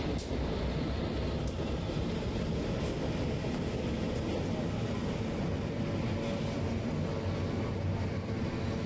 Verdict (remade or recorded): recorded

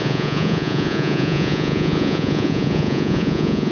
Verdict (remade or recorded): remade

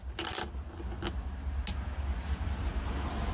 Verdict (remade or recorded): recorded